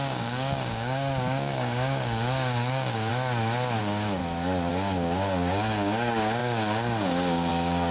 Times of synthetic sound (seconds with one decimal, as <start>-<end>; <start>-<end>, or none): 0.0-3.1; 3.8-4.2; 4.7-7.9